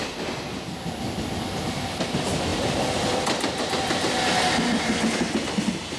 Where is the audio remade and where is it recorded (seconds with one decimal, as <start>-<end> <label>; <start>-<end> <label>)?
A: 0.0-6.0 recorded